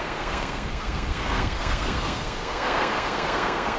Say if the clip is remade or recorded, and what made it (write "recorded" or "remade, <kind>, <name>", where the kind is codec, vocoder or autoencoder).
remade, codec, SNAC